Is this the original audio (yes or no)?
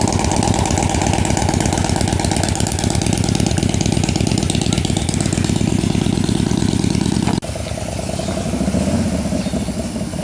yes